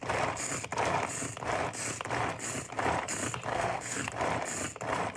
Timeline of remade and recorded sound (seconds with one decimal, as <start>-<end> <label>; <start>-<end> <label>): 0.0-3.5 recorded; 3.5-4.1 remade; 4.1-5.2 recorded